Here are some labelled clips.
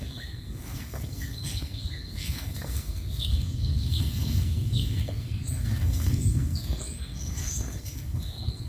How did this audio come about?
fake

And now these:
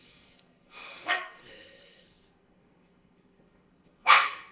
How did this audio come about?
fake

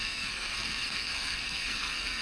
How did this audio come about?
fake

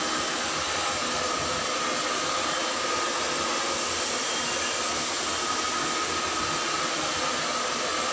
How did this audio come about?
real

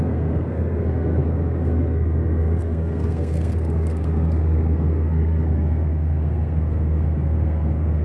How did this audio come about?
fake